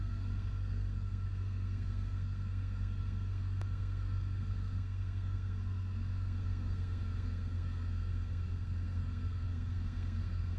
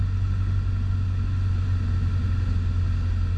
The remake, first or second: first